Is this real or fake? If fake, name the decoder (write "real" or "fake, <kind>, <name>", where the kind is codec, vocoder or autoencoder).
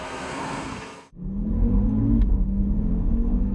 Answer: fake, codec, SNAC